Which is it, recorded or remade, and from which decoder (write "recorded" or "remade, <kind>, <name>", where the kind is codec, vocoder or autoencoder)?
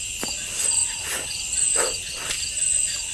recorded